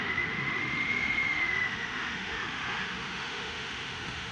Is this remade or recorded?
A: remade